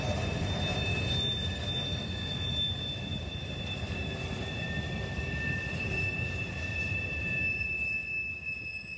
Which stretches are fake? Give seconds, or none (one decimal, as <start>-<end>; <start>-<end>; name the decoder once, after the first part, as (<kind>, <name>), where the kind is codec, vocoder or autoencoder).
3.1-7.7 (vocoder, BigVGAN v2)